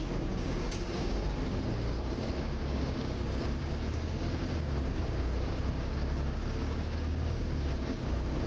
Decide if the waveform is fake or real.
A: fake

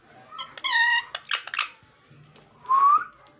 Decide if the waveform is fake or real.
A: real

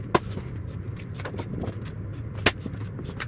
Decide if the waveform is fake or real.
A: real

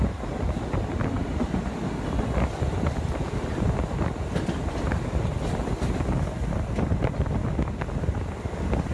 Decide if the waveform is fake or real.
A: real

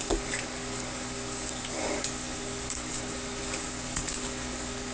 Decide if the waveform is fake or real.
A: fake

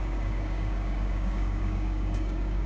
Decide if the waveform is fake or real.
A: fake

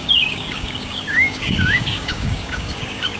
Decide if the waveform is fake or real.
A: fake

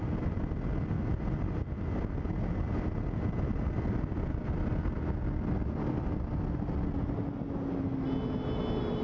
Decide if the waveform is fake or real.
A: real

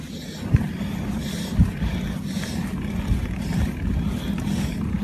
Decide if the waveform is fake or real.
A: real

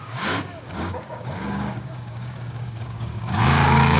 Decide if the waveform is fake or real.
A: fake